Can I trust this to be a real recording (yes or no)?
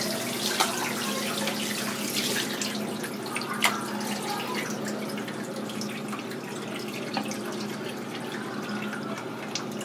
yes